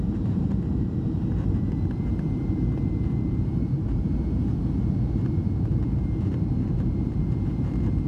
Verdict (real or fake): fake